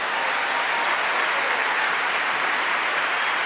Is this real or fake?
real